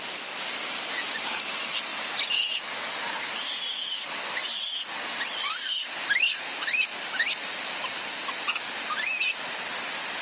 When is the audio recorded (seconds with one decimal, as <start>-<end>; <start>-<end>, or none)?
4.4-8.1; 9.7-10.2